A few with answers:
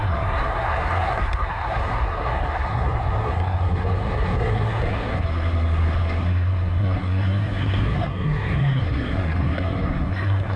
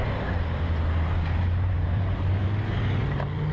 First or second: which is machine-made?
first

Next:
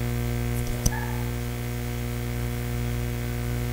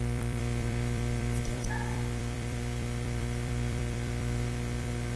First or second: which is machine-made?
second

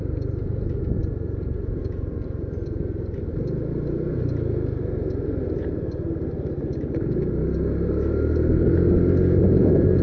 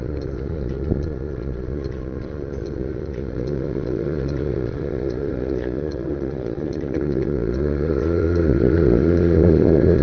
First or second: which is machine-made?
second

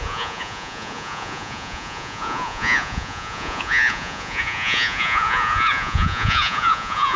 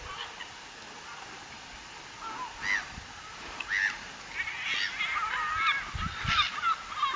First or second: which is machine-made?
first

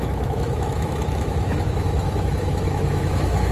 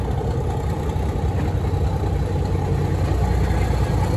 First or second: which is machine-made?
first